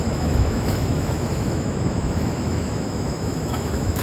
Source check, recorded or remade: remade